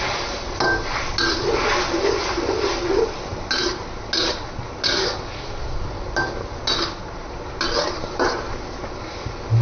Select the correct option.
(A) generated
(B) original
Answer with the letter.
B